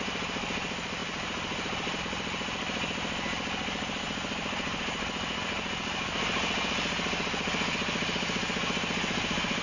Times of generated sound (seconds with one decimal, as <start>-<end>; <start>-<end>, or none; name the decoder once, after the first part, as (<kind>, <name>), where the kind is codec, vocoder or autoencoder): none